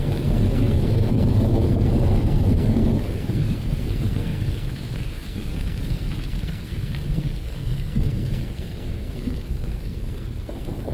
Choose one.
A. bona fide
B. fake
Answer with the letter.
B